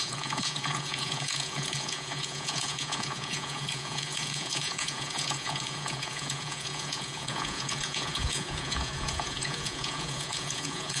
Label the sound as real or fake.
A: fake